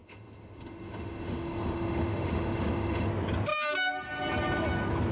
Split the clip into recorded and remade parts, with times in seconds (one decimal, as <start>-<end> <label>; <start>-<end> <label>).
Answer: 0.0-3.1 remade; 3.1-5.1 recorded